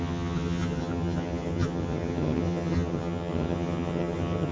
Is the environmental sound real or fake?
fake